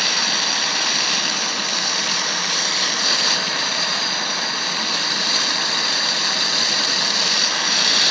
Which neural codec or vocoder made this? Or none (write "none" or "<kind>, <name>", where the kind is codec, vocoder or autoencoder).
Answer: vocoder, BigVGAN v2